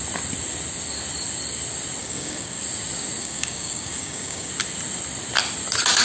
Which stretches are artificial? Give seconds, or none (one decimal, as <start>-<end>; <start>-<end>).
2.0-2.6; 3.2-4.5